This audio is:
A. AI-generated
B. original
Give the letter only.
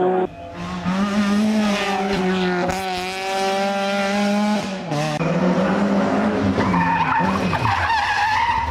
B